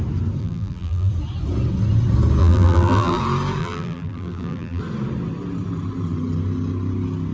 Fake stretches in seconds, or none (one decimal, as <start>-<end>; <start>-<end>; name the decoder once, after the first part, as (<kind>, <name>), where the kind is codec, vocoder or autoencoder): 0.4-1.1 (vocoder, BigVGAN v2); 2.4-3.2; 3.6-4.8